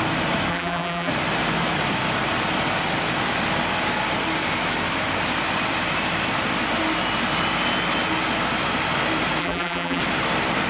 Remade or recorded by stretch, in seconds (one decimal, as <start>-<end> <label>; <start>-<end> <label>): 0.0-0.5 recorded; 0.5-1.1 remade; 1.1-9.4 recorded; 9.4-10.0 remade; 10.0-10.7 recorded